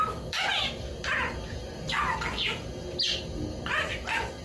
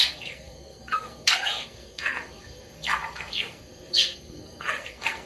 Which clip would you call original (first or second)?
first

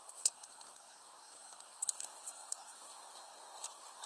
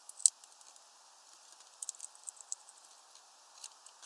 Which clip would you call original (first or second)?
second